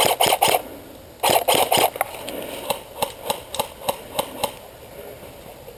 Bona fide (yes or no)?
yes